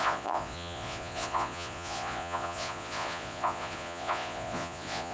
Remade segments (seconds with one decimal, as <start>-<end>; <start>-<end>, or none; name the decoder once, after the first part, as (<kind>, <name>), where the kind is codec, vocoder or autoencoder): 0.0-5.1 (vocoder, Vocos)

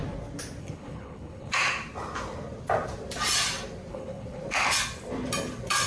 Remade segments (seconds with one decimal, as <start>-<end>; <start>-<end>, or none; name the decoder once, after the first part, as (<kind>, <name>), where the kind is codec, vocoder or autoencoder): 0.6-1.5 (codec, HILCodec); 3.9-4.4

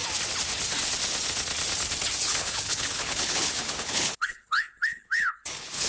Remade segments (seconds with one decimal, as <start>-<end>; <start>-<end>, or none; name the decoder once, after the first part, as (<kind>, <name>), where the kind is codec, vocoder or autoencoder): 2.3-5.9 (codec, HILCodec)

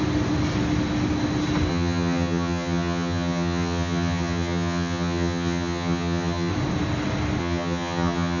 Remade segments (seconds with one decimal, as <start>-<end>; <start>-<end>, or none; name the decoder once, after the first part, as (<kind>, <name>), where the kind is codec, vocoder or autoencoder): 1.7-6.5 (vocoder, HiFi-GAN); 7.4-8.4

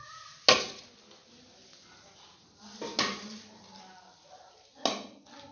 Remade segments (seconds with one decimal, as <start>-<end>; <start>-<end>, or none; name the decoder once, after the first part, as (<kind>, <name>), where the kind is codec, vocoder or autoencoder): none

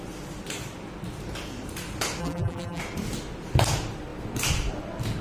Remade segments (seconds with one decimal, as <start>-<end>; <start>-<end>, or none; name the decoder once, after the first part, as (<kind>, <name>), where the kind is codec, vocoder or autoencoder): 2.2-2.8 (vocoder, BigVGAN v2)